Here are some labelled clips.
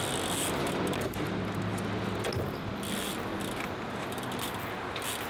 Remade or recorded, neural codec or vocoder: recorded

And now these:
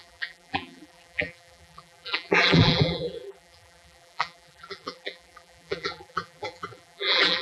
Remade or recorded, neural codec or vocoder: remade, vocoder, BigVGAN v2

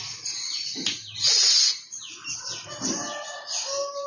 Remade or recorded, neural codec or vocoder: recorded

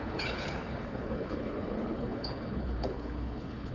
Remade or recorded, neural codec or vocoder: remade, codec, HILCodec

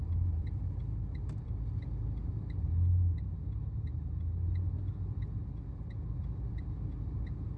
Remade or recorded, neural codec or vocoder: recorded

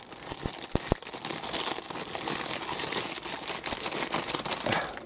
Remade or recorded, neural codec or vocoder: recorded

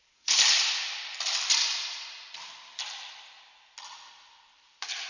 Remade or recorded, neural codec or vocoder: remade, vocoder, BigVGAN v2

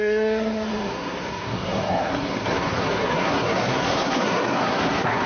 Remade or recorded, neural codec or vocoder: remade, codec, SNAC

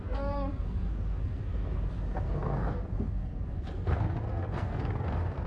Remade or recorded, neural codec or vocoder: remade, codec, SNAC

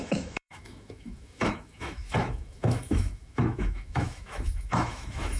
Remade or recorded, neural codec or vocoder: remade, autoencoder, DAC-VAE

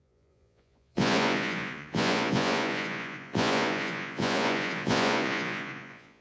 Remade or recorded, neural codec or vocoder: remade, vocoder, Vocos